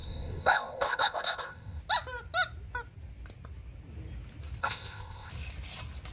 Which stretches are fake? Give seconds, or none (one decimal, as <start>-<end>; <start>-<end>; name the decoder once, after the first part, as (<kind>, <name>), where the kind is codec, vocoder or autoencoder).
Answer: 0.0-1.8 (codec, ZipCodec); 4.6-5.3